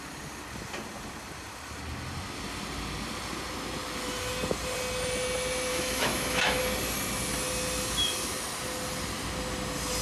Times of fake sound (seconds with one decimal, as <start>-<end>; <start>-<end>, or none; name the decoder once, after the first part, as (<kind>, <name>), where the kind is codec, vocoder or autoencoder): 5.7-6.6 (autoencoder, DAC-VAE)